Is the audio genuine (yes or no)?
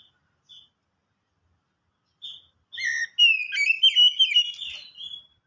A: yes